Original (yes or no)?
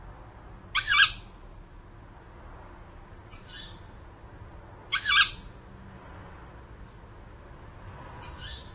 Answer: yes